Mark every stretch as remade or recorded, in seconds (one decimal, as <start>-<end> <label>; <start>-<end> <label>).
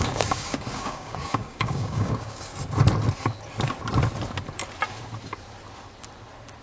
0.0-2.5 remade; 2.5-6.6 recorded